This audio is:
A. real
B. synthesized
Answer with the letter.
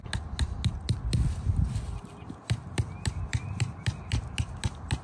A